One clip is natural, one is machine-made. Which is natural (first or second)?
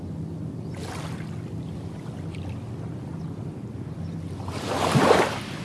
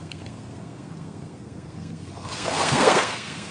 first